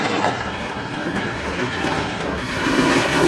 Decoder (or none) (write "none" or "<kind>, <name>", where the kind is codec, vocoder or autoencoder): codec, SNAC